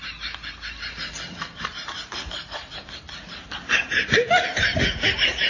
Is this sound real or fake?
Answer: real